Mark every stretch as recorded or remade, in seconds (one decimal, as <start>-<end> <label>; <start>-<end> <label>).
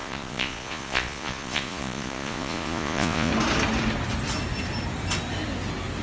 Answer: 0.0-3.3 remade; 3.3-6.0 recorded